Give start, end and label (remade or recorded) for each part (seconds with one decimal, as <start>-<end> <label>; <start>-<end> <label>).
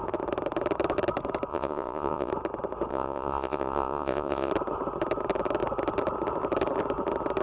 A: 0.0-1.5 recorded; 1.5-2.3 remade; 2.3-2.9 recorded; 2.9-4.5 remade; 4.5-7.4 recorded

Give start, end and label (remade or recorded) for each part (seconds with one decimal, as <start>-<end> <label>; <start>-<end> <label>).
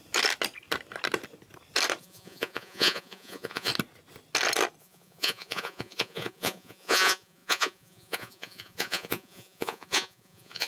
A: 0.0-2.0 recorded; 2.0-3.7 remade; 3.7-4.8 recorded; 4.8-10.7 remade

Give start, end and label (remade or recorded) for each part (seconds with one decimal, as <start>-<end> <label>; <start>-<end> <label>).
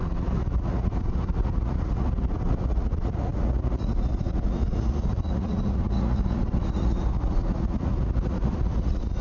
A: 0.0-9.2 remade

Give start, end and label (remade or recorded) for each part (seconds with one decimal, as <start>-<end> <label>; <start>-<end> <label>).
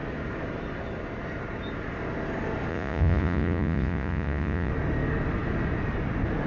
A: 0.0-2.7 recorded; 2.7-4.7 remade; 4.7-6.5 recorded